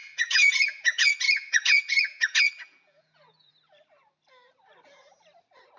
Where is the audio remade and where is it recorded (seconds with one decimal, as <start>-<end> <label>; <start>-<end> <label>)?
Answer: 0.0-3.5 remade; 3.5-5.8 recorded